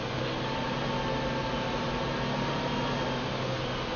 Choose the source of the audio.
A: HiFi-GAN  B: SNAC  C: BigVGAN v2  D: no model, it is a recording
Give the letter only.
D